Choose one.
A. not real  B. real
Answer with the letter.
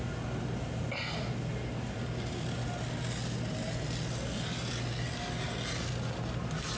B